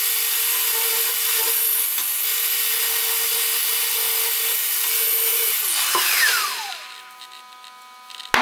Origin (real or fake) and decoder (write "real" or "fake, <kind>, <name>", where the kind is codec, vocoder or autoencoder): real